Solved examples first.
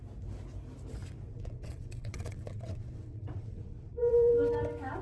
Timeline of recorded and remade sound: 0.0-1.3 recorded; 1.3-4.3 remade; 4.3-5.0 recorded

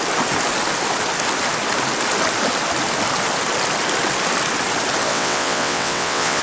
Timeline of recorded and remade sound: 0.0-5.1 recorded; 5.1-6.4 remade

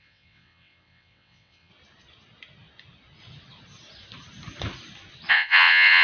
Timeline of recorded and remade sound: 0.0-1.7 remade; 1.7-5.3 recorded; 5.3-6.0 remade

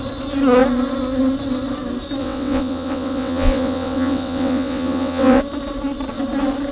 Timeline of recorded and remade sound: 0.0-2.2 recorded; 2.2-5.4 remade; 5.4-6.7 recorded

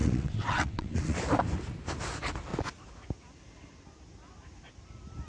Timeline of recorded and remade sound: 0.0-1.2 remade; 1.2-5.3 recorded

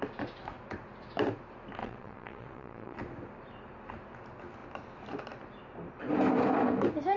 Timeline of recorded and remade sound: 0.0-1.8 recorded; 1.8-3.0 remade; 3.0-7.2 recorded

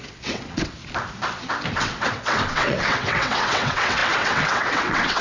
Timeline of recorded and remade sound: 0.0-0.8 remade; 0.8-1.8 recorded; 1.8-5.2 remade

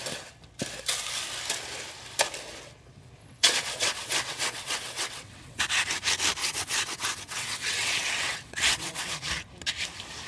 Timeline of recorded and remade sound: 0.0-3.2 recorded; 3.2-5.6 remade; 5.6-6.4 recorded; 6.4-9.1 remade; 9.1-10.3 recorded